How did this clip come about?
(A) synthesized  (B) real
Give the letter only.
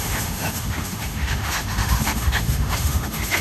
A